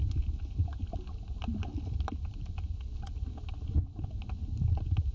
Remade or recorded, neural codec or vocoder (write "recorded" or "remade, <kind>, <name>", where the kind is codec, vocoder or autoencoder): recorded